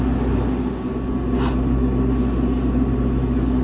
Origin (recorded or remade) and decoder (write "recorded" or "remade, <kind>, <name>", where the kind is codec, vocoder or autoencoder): recorded